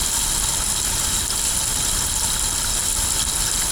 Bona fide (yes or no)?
yes